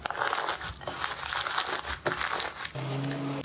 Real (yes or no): yes